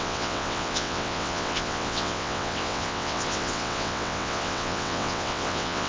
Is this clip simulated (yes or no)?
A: yes